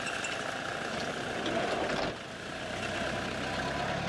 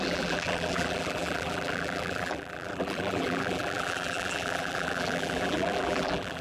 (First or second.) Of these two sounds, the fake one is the second